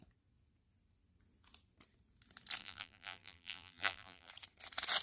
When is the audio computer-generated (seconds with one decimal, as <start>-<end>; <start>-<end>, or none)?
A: 2.6-4.3